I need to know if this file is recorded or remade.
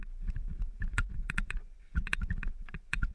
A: remade